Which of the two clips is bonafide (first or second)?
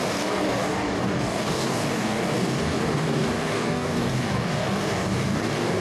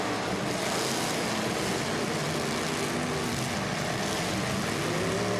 second